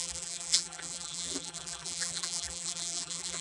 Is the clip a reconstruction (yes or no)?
yes